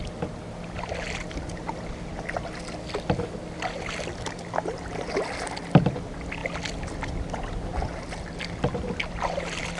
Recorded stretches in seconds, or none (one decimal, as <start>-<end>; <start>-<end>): 0.0-9.8